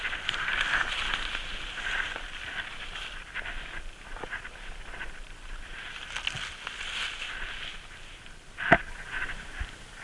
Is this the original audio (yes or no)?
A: yes